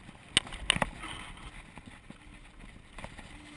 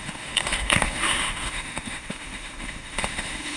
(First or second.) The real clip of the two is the first